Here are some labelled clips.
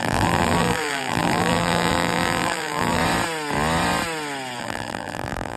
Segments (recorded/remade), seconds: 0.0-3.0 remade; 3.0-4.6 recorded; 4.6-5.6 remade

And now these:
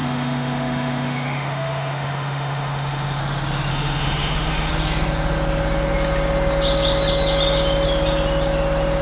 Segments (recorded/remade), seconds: 0.0-3.2 remade; 3.2-3.7 recorded; 3.7-4.7 remade; 4.7-9.0 recorded

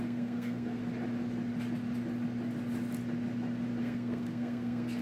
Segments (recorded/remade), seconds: 0.0-0.8 remade; 0.8-3.8 recorded; 3.8-5.0 remade

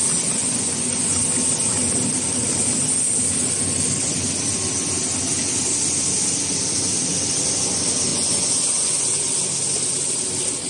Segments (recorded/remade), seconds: 0.0-0.4 recorded; 0.4-1.2 remade; 1.2-8.1 recorded; 8.1-9.2 remade; 9.2-10.7 recorded

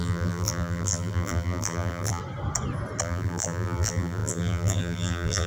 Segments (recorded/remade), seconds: 0.0-2.2 remade; 2.2-3.0 recorded; 3.0-5.5 remade

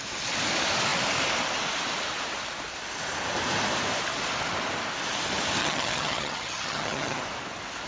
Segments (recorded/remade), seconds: 0.0-5.6 recorded; 5.6-7.2 remade; 7.2-7.9 recorded

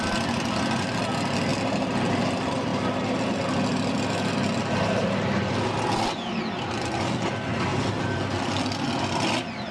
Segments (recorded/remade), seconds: 0.0-1.5 remade; 1.5-2.0 recorded; 2.0-7.7 remade; 7.7-8.3 recorded; 8.3-9.7 remade